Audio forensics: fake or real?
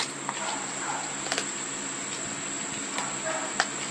real